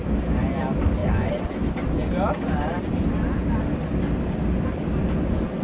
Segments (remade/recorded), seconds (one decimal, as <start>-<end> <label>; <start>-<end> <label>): 0.0-1.0 remade; 1.0-2.8 recorded; 2.8-3.4 remade; 3.4-5.6 recorded